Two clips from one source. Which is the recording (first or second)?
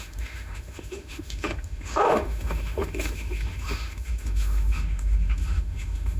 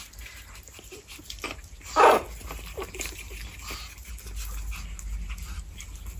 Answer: second